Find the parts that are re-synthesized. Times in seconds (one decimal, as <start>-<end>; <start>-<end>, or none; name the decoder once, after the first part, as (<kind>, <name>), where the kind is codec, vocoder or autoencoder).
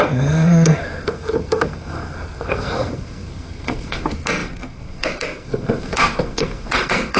0.0-7.2 (codec, SNAC)